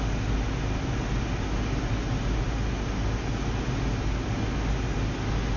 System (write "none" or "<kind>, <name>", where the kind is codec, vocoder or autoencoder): none